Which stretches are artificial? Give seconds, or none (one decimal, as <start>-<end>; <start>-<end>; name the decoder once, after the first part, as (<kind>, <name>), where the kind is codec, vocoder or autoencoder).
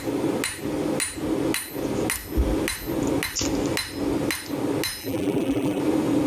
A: 5.0-5.8 (vocoder, BigVGAN v2)